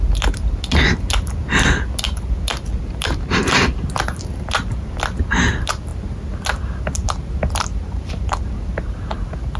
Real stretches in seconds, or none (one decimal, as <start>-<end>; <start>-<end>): 0.0-9.6